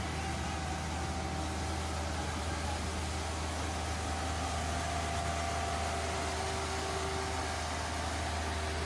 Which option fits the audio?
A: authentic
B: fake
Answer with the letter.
A